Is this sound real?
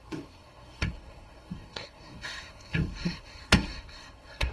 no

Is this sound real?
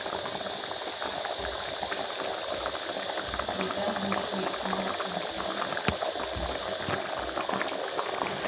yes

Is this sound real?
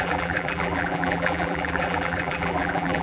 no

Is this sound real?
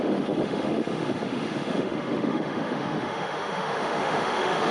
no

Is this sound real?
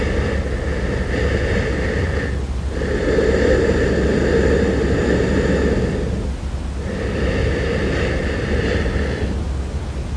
yes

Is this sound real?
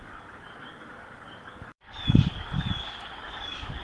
no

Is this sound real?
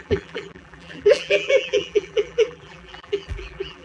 no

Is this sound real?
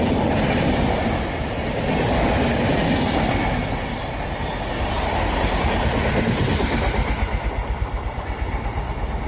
yes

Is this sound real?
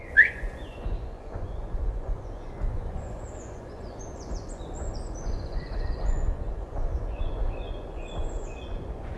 no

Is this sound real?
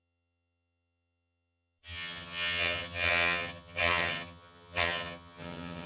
no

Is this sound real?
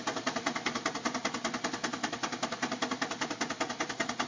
yes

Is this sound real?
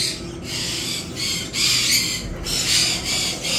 yes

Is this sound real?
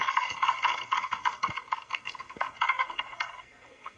no